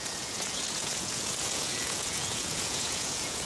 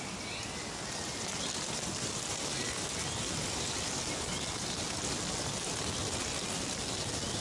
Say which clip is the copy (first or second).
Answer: first